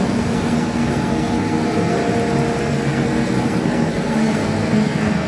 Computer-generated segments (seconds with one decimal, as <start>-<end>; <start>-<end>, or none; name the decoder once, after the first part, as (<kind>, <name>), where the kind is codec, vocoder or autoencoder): 0.0-2.0 (codec, SNAC); 2.6-5.3